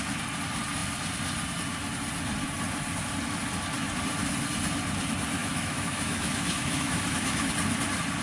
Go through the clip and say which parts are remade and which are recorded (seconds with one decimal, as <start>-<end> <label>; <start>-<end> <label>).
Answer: 0.0-5.4 recorded; 5.4-7.5 remade; 7.5-8.2 recorded